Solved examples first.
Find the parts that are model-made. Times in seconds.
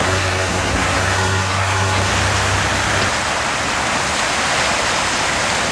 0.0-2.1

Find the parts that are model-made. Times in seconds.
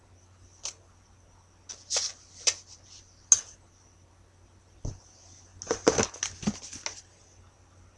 none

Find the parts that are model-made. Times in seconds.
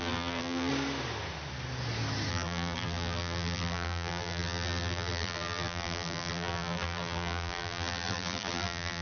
0.0-0.7; 2.3-9.0